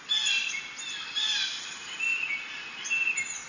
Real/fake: real